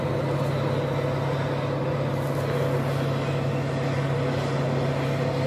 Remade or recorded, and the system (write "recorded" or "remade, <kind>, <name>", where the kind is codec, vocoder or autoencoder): recorded